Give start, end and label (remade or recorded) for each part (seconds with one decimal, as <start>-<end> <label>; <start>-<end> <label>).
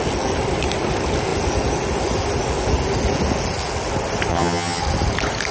0.0-4.3 recorded; 4.3-4.8 remade; 4.8-5.5 recorded